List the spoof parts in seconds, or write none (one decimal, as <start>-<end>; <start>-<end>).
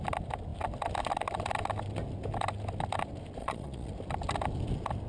3.4-3.9